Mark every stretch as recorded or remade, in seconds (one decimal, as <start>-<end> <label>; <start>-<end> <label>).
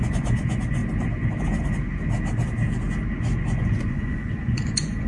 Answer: 0.0-0.8 remade; 0.8-3.3 recorded; 3.3-5.1 remade